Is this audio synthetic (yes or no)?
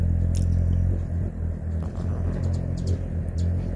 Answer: no